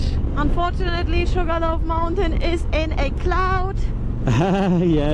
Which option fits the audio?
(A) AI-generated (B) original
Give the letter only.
B